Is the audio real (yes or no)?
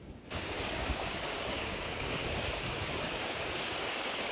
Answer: no